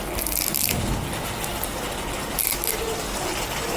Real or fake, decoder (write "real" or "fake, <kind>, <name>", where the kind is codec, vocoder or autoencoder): real